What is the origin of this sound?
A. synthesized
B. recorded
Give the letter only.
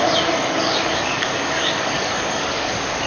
A